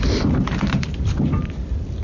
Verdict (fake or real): real